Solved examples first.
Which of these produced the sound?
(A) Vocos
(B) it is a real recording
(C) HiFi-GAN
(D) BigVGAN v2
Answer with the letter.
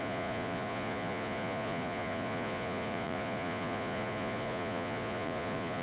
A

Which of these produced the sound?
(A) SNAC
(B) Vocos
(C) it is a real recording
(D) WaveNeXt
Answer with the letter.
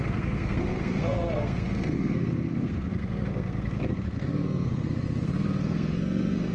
A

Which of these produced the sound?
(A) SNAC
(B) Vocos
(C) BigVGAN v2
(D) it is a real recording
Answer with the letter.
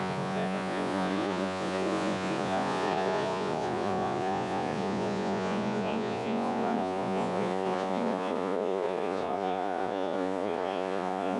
B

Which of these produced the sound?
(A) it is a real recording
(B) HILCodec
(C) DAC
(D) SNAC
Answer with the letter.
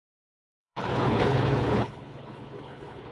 B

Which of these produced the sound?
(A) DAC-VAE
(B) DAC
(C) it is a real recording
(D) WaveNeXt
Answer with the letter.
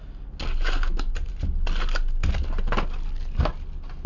C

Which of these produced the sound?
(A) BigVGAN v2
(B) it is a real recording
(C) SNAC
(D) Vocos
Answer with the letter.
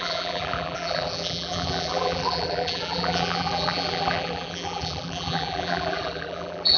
A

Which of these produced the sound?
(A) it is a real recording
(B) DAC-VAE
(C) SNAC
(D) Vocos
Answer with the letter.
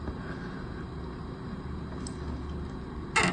A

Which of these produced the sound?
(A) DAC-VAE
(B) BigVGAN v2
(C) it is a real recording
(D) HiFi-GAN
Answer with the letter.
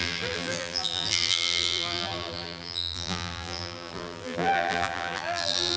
B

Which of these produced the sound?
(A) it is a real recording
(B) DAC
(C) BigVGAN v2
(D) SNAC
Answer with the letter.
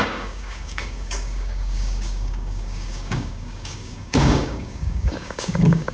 B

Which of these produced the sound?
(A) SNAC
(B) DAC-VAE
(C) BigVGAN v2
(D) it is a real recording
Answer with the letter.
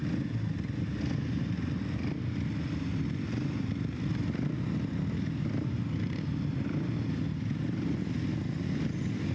D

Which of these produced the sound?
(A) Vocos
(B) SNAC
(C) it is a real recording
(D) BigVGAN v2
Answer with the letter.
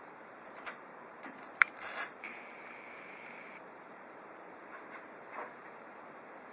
D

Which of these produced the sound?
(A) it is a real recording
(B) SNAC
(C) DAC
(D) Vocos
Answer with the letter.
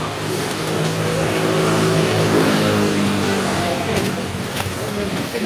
C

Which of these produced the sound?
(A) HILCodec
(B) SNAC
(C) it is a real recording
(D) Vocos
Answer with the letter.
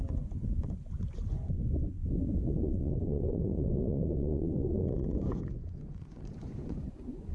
D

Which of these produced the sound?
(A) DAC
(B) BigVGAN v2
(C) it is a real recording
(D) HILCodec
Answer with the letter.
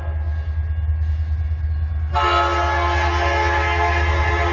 C